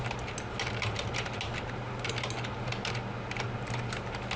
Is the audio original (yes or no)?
yes